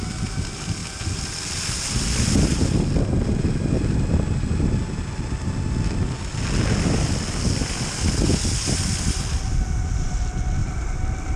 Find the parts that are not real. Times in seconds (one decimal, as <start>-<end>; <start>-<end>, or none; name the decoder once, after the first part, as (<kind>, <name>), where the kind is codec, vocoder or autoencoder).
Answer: 0.8-1.7 (vocoder, BigVGAN v2); 10.6-11.4